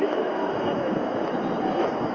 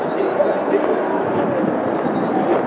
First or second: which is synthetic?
first